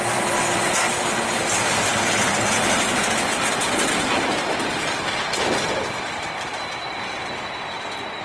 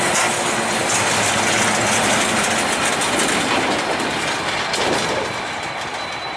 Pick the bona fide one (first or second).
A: second